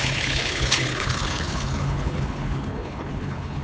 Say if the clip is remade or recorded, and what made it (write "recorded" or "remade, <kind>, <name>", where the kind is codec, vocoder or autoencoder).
remade, codec, HILCodec